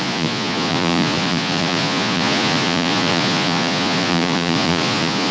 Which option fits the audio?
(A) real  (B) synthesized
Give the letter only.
B